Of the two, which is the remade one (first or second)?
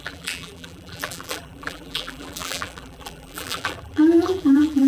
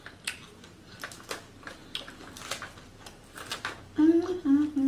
first